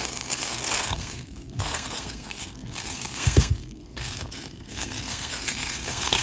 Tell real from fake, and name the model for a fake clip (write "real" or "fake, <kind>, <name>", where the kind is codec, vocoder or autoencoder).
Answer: fake, codec, SNAC